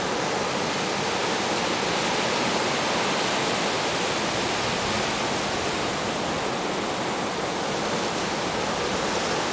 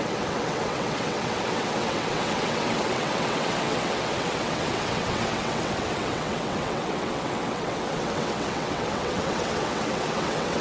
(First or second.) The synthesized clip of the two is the second